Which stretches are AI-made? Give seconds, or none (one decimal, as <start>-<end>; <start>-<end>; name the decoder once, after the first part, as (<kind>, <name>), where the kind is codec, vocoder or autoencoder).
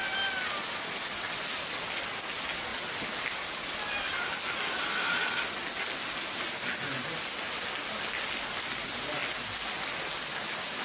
none